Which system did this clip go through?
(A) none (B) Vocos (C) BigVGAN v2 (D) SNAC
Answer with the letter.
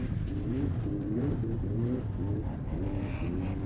C